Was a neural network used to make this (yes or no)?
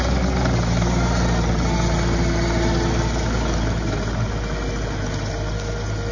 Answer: no